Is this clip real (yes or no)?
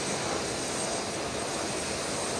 no